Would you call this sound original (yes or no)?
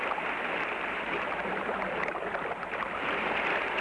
no